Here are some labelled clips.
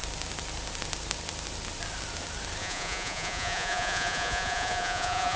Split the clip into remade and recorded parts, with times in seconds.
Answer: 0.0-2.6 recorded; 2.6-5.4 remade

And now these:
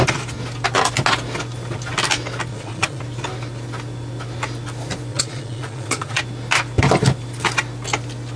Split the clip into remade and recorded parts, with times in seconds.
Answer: 0.0-2.5 recorded; 2.5-3.0 remade; 3.0-5.1 recorded; 5.1-6.2 remade; 6.2-8.4 recorded

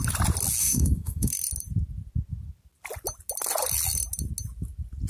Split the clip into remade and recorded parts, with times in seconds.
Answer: 0.0-0.6 recorded; 0.6-1.3 remade; 1.3-5.1 recorded

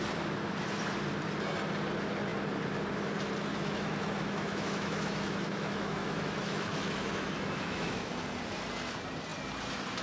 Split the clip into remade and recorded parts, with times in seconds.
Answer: 0.0-3.5 recorded; 3.5-8.1 remade; 8.1-10.0 recorded

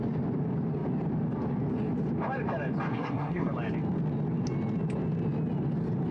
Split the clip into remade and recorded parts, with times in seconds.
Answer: 0.0-2.9 recorded; 2.9-3.5 remade; 3.5-6.1 recorded

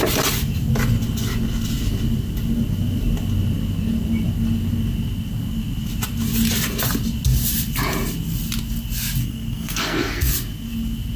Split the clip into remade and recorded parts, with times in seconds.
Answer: 0.0-9.2 recorded; 9.2-10.3 remade; 10.3-11.2 recorded